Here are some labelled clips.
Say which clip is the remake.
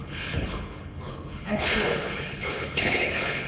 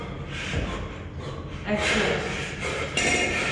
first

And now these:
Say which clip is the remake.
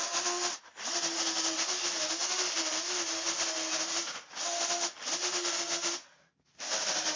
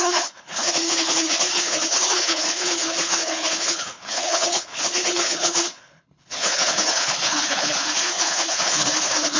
second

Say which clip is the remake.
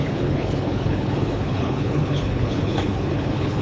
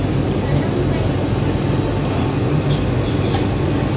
first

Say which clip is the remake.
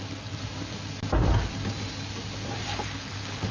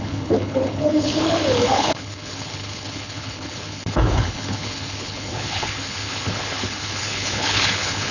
second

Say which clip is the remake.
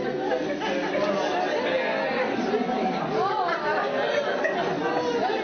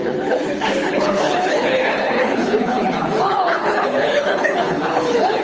second